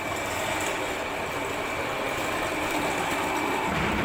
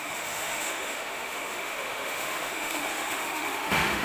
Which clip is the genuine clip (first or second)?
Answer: first